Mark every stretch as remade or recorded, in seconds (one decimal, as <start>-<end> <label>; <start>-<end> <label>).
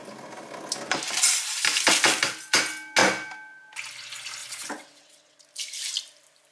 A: 0.0-4.4 recorded; 4.4-5.4 remade; 5.4-6.5 recorded